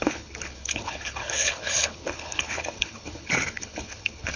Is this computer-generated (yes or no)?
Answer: yes